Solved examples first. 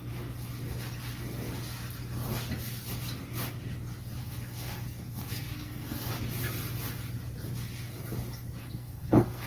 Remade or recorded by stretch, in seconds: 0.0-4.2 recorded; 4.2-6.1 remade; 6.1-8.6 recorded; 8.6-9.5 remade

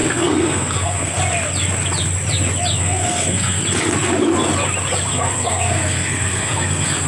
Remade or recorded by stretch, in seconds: 0.0-1.2 remade; 1.2-2.8 recorded; 2.8-3.6 remade; 3.6-5.1 recorded; 5.1-7.1 remade

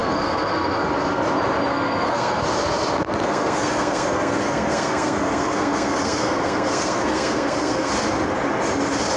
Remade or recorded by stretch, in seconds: 0.0-1.2 remade; 1.2-1.7 recorded; 1.7-2.4 remade; 2.4-3.2 recorded; 3.2-7.9 remade; 7.9-9.2 recorded

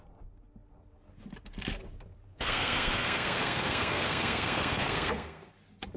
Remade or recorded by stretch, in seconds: 0.0-2.3 recorded; 2.3-5.5 remade; 5.5-6.0 recorded

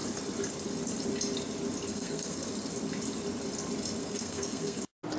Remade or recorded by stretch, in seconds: 0.0-1.9 recorded; 1.9-2.5 remade; 2.5-4.0 recorded; 4.0-4.8 remade; 4.8-5.2 recorded

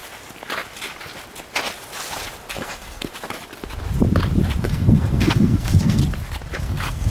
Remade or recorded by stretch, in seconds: 0.0-2.5 recorded; 2.5-3.1 remade; 3.1-4.6 recorded; 4.6-6.0 remade; 6.0-6.6 recorded; 6.6-7.1 remade

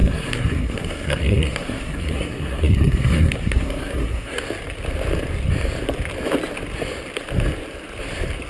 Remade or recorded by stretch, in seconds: 0.0-4.4 remade; 4.4-8.5 recorded

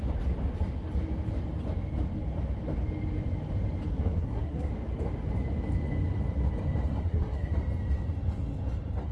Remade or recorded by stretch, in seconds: 0.0-3.9 recorded; 3.9-4.7 remade; 4.7-6.9 recorded; 6.9-7.5 remade; 7.5-9.1 recorded